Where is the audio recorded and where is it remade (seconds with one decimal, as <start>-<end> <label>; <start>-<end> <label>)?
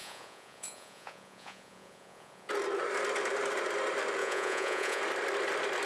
0.0-2.5 remade; 2.5-4.2 recorded; 4.2-5.0 remade; 5.0-5.9 recorded